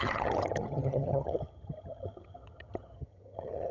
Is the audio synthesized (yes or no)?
yes